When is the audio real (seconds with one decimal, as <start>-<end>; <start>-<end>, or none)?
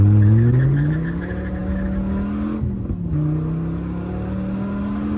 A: 0.0-5.2